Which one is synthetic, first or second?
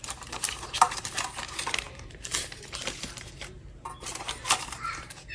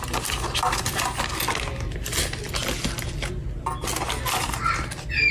first